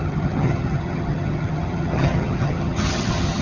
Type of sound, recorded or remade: remade